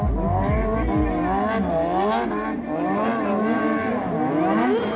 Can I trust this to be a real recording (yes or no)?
yes